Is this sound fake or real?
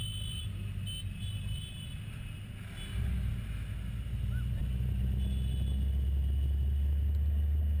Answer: real